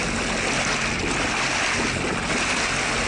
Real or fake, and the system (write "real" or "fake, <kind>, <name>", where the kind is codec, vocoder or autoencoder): real